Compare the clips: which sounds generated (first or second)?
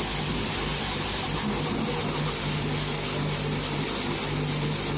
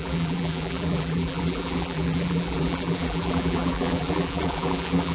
second